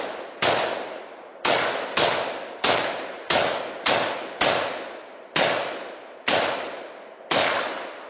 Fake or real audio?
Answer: real